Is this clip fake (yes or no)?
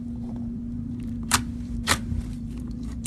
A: yes